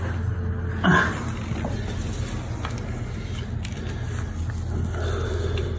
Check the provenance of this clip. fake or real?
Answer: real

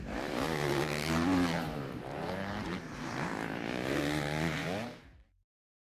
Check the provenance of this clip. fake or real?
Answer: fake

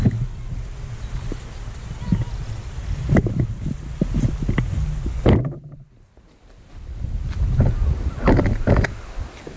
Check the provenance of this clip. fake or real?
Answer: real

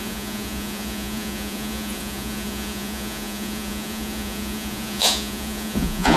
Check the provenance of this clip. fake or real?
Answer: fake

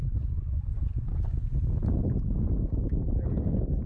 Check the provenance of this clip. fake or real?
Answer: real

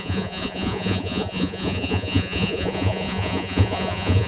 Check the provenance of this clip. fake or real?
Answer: fake